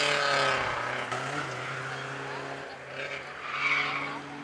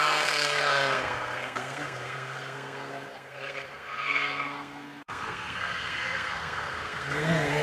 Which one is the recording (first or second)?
first